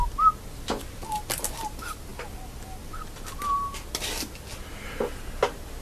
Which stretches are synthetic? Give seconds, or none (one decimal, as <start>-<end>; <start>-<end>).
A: none